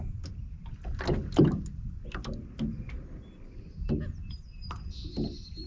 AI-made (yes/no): no